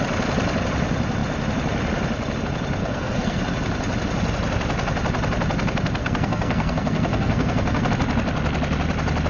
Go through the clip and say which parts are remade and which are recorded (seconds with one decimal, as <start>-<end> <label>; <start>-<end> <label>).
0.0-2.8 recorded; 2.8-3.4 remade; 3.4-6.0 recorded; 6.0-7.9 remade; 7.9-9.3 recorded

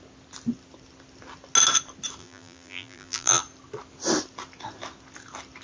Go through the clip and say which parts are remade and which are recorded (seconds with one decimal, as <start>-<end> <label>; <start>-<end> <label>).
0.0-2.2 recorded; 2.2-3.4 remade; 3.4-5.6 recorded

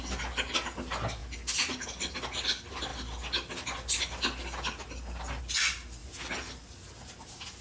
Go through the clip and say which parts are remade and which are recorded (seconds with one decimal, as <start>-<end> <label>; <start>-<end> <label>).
0.0-7.6 recorded

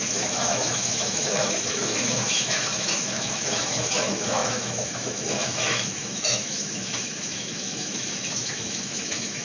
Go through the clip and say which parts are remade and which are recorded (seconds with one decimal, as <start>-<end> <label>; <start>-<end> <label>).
0.0-9.4 remade

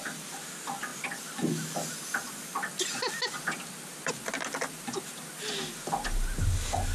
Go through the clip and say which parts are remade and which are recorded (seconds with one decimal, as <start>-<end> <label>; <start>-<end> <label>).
0.0-6.9 recorded